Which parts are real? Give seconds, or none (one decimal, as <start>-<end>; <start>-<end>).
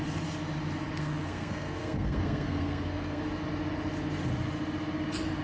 0.0-1.0; 3.2-5.4